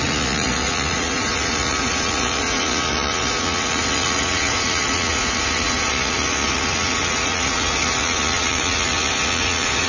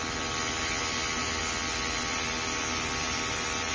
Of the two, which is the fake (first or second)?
first